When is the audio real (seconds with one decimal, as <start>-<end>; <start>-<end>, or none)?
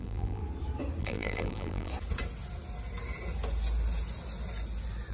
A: 0.4-1.0; 1.9-5.1